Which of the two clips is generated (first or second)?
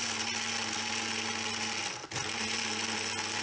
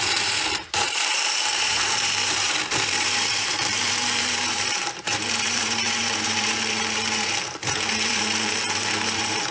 second